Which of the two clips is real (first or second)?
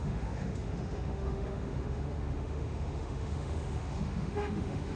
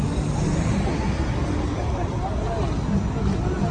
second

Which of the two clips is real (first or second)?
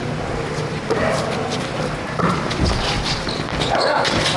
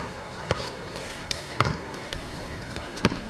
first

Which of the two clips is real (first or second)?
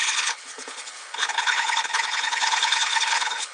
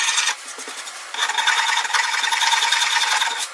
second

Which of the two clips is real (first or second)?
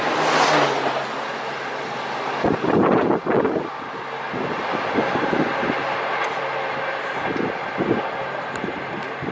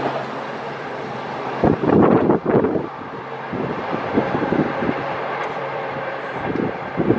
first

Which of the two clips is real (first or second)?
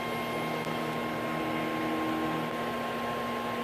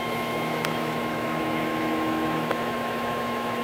first